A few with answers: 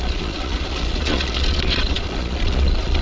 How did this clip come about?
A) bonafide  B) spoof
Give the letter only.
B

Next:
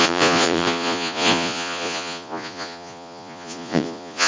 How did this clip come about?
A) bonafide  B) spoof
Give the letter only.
B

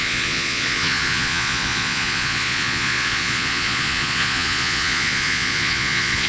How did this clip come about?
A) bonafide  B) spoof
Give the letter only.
B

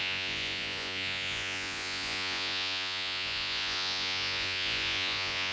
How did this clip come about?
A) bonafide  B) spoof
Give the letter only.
B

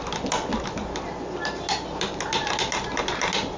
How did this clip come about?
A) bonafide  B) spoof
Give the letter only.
A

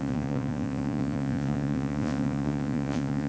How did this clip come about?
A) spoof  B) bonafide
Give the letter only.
A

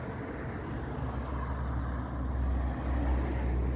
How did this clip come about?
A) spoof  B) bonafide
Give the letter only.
B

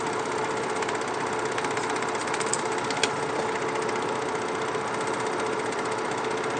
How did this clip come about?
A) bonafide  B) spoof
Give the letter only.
A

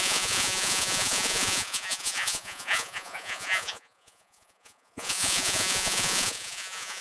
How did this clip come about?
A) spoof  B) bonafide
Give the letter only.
A